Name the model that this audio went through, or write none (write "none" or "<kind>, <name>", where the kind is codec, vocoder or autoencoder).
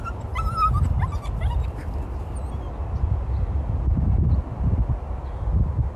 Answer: none